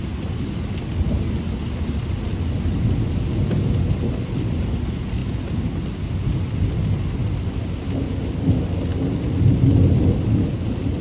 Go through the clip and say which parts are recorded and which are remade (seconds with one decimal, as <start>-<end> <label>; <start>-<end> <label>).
0.0-11.0 recorded